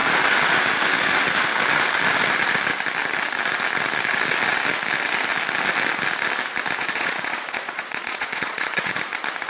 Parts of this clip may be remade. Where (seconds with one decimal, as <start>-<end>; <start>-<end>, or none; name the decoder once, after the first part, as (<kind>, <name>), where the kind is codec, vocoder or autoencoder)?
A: 6.8-9.0 (vocoder, Vocos)